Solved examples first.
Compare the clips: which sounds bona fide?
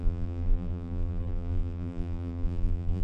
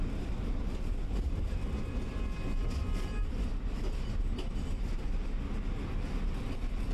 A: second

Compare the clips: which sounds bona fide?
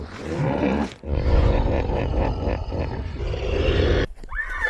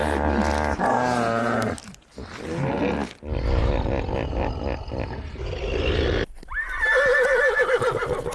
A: second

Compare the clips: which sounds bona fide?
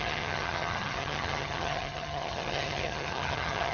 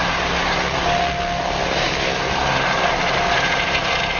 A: second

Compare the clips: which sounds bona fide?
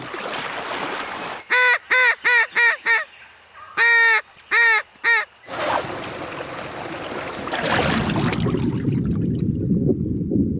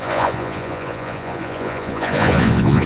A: first